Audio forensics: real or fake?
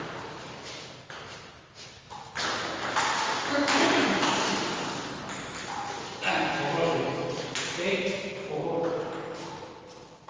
real